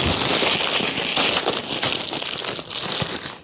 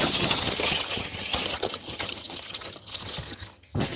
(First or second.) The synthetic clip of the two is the second